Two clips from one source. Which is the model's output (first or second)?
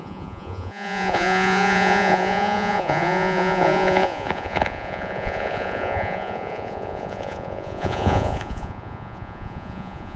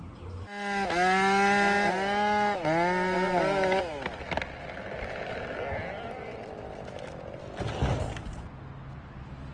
first